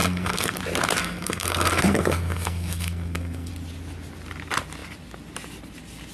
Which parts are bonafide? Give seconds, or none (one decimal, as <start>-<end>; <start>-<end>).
0.6-1.0; 3.5-6.1